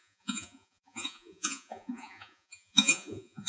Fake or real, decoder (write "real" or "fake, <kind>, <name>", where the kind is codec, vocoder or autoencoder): fake, vocoder, Vocos